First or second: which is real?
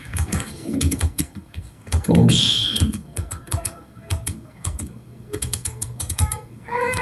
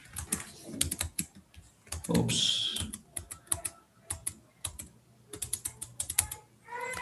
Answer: second